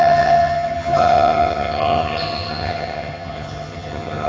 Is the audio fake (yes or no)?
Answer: yes